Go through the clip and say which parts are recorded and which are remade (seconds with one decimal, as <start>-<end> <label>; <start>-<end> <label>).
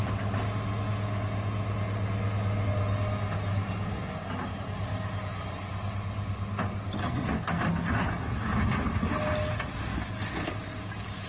0.0-7.0 recorded; 7.0-7.6 remade; 7.6-11.3 recorded